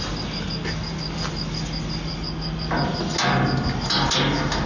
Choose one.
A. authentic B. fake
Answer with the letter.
A